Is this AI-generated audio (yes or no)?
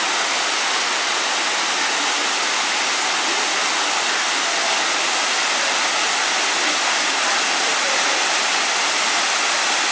no